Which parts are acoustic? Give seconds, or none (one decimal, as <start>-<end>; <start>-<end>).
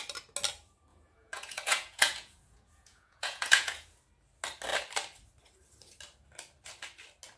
0.0-0.9; 4.0-7.4